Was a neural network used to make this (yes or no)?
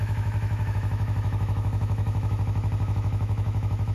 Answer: yes